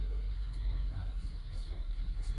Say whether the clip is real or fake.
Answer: fake